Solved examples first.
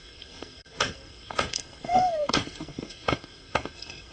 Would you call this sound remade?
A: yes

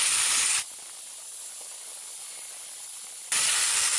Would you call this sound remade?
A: no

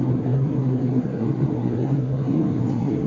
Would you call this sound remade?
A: yes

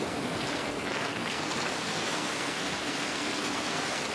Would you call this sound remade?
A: yes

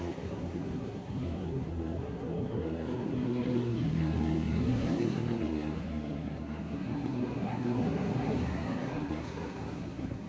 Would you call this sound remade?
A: yes